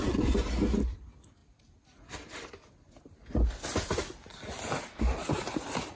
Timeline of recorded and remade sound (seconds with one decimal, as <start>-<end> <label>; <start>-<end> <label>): 0.0-6.0 recorded